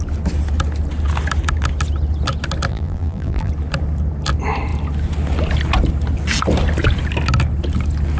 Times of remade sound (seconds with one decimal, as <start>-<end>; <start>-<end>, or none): 2.7-3.5